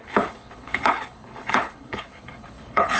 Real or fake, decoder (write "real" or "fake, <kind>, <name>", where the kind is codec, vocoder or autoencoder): fake, codec, HILCodec